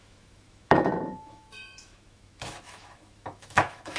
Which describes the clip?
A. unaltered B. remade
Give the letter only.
B